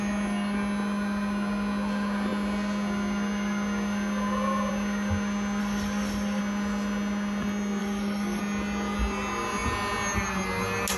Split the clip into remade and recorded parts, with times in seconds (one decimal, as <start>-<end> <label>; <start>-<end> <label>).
0.0-5.6 recorded; 5.6-6.4 remade; 6.4-7.8 recorded; 7.8-8.4 remade; 8.4-11.0 recorded